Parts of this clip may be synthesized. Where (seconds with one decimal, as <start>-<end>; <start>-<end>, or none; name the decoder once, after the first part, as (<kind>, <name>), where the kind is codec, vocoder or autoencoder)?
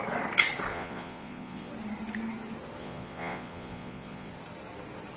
0.7-1.7 (vocoder, Vocos); 2.8-4.3